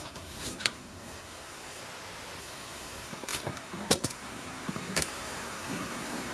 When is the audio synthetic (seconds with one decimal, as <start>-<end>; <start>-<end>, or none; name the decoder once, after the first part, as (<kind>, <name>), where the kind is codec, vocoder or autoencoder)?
0.0-1.8 (codec, SNAC); 2.4-6.3